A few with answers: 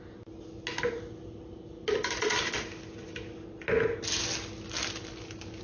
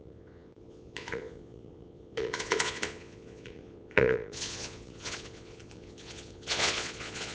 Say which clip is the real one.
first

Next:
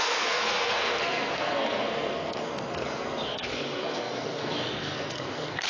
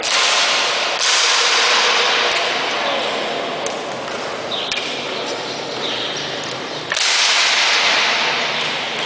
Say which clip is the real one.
second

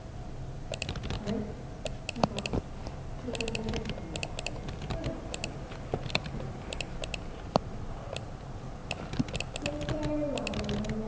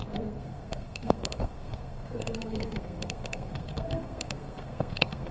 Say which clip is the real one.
first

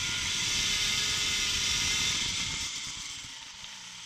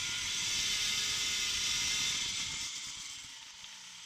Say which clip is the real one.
second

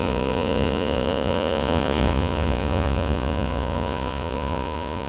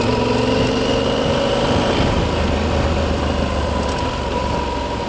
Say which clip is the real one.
second